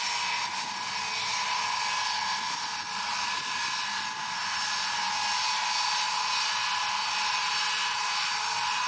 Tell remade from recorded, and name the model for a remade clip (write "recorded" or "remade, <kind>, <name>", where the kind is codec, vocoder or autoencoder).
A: recorded